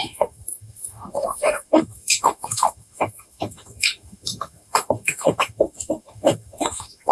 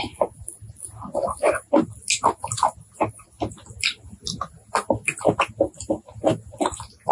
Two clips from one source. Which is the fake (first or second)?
first